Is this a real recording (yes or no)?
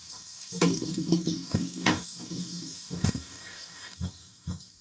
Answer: no